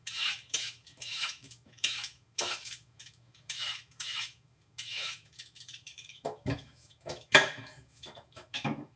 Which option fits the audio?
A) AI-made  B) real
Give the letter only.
A